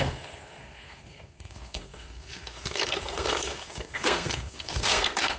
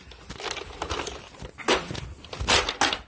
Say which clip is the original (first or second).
second